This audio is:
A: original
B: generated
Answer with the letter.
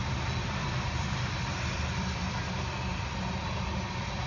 B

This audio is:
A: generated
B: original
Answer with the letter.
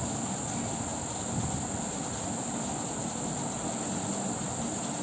B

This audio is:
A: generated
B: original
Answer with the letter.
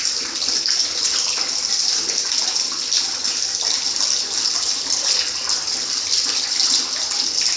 B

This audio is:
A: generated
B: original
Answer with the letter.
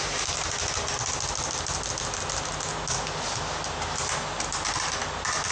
B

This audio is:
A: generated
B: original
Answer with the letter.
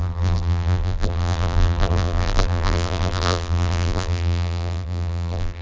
A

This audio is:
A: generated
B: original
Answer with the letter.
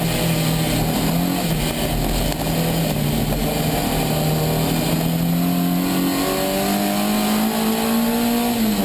B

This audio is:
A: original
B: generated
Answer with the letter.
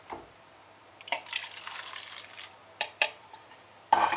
B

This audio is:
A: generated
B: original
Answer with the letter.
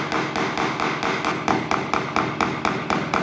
B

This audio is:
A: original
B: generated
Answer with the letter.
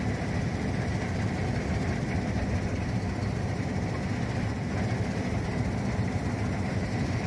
B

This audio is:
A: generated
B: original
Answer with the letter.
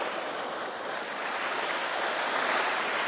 B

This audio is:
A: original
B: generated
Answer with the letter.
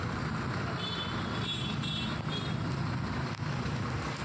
A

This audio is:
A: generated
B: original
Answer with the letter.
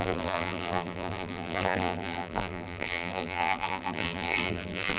A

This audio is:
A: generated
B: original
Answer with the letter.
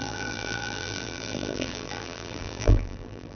A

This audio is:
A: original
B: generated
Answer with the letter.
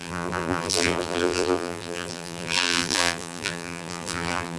B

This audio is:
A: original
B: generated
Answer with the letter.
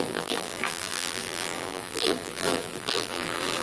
B